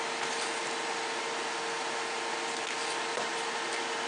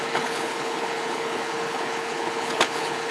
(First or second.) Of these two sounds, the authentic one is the first